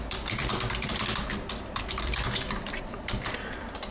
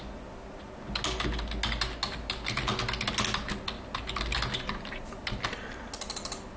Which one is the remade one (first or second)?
first